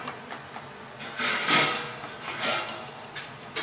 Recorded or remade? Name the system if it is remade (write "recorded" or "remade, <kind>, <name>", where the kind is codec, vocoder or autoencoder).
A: recorded